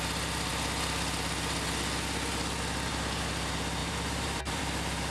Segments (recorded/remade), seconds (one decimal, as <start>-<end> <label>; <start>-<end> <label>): 0.0-3.8 recorded; 3.8-4.6 remade; 4.6-5.1 recorded